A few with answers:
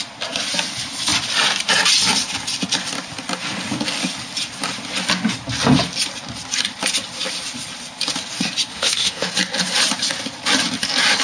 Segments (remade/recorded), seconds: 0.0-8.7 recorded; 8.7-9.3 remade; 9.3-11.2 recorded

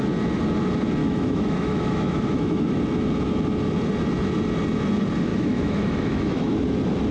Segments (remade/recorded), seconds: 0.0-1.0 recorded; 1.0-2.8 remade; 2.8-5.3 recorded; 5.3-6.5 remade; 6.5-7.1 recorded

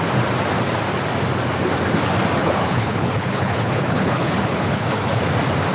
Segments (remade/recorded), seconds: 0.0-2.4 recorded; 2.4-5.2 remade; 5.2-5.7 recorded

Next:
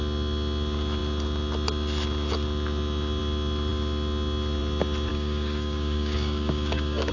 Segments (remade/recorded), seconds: 0.0-5.1 recorded; 5.1-7.1 remade

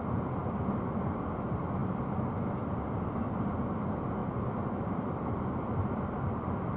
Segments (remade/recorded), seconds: 0.0-6.8 recorded

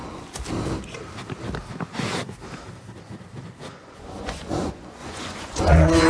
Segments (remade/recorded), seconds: 0.0-3.7 recorded; 3.7-6.1 remade

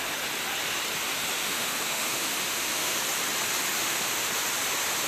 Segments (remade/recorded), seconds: 0.0-1.4 recorded; 1.4-3.0 remade; 3.0-3.8 recorded; 3.8-4.3 remade; 4.3-5.1 recorded